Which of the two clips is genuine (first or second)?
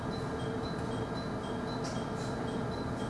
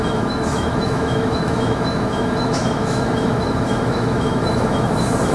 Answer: first